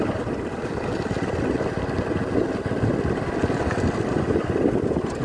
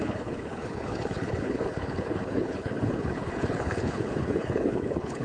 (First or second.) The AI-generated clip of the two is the second